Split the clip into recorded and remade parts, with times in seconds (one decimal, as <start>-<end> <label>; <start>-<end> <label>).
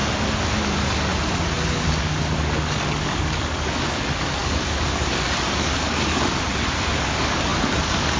0.0-0.6 recorded; 0.6-1.1 remade; 1.1-1.7 recorded; 1.7-8.2 remade